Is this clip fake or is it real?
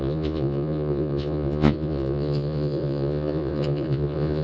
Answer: fake